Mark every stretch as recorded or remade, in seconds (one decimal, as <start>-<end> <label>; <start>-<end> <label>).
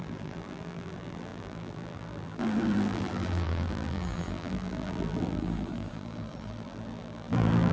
0.0-7.7 remade